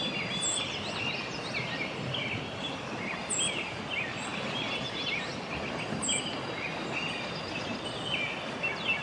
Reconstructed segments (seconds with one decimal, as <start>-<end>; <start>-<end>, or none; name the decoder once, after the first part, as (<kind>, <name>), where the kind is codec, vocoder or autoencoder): 3.2-3.8 (vocoder, BigVGAN v2)